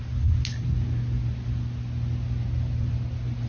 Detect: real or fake real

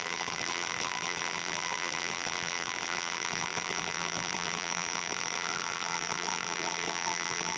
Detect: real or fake fake